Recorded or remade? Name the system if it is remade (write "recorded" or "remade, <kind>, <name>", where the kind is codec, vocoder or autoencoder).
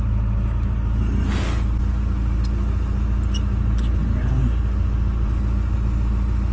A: recorded